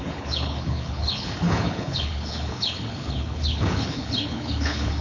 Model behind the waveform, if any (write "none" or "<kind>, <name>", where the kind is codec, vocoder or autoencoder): codec, HILCodec